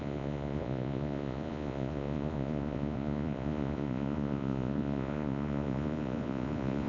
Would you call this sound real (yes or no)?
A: no